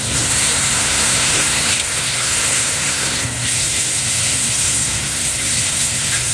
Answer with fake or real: fake